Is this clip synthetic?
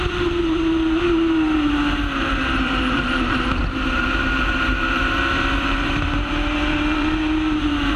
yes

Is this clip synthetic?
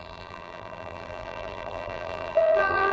yes